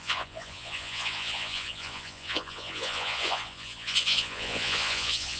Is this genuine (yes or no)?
no